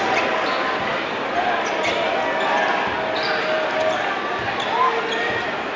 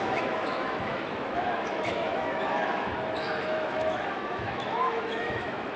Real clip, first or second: first